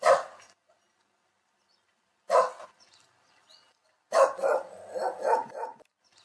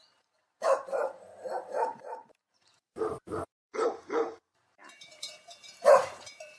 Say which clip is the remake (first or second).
second